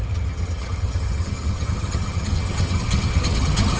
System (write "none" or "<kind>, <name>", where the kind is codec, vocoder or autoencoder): vocoder, HiFi-GAN